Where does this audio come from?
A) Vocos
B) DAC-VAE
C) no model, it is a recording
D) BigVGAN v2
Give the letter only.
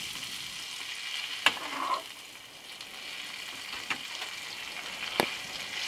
C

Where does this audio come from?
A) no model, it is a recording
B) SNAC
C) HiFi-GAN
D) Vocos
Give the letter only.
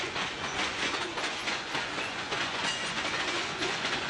D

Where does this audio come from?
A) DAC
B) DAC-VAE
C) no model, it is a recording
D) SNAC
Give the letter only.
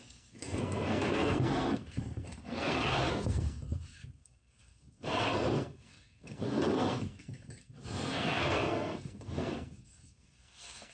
D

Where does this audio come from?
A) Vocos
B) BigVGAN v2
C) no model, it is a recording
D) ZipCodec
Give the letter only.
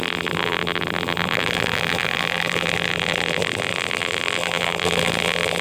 B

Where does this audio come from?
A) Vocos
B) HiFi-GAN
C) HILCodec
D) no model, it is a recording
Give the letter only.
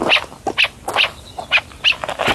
D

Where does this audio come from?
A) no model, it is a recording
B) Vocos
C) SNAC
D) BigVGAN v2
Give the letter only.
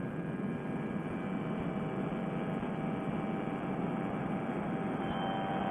A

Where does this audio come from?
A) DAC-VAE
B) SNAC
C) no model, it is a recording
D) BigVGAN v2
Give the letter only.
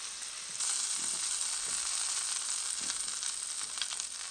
C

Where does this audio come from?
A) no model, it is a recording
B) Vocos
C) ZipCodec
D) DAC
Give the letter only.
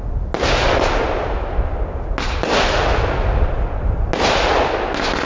A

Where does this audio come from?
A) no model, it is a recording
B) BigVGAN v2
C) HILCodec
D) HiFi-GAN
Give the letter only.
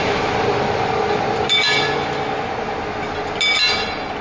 A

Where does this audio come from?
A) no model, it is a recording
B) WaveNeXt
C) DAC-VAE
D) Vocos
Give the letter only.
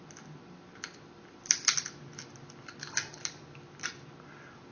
A